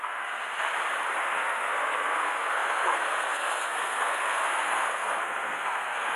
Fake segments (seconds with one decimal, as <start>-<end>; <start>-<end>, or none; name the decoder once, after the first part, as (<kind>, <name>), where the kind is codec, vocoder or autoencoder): 0.0-0.4 (codec, SNAC); 1.2-6.2